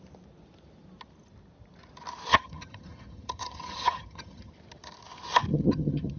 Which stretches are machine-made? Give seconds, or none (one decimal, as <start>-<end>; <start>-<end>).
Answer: 2.3-4.5; 5.5-6.2